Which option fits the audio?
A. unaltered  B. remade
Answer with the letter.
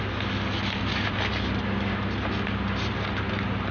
A